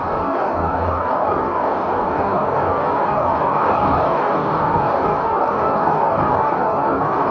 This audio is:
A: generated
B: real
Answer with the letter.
A